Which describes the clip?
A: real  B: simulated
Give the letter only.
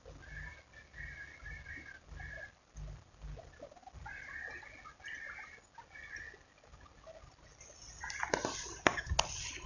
A